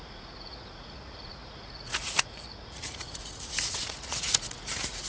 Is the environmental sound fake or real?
fake